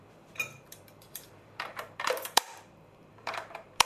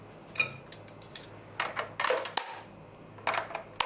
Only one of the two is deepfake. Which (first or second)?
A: first